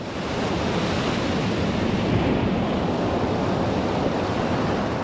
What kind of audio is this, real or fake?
real